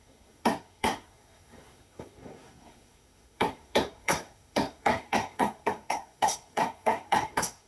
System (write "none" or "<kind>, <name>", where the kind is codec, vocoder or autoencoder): codec, SNAC